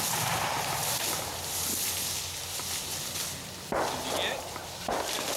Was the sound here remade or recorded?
recorded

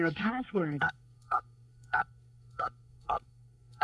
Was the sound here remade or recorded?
remade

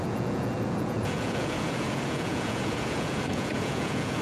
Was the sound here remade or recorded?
remade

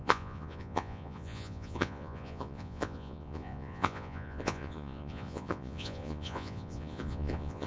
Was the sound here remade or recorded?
remade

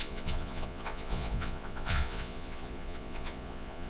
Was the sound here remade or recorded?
remade